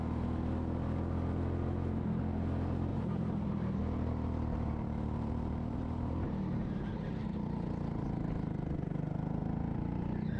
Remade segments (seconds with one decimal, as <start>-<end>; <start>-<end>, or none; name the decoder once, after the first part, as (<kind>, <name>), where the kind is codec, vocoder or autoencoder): 2.9-7.1 (vocoder, BigVGAN v2)